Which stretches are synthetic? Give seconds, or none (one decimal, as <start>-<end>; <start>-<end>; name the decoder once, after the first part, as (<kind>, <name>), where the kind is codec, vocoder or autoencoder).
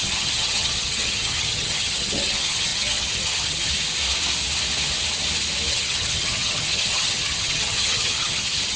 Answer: 0.0-3.7 (vocoder, HiFi-GAN); 5.7-8.8